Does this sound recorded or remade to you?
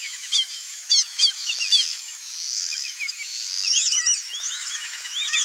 remade